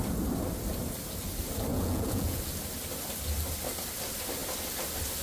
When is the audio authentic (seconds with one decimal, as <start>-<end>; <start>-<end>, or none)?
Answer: 0.0-1.7; 2.4-5.2